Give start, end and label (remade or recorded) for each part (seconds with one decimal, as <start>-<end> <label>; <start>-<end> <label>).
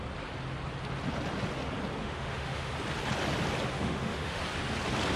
0.0-2.0 recorded; 2.0-2.7 remade; 2.7-3.7 recorded; 3.7-4.4 remade; 4.4-5.2 recorded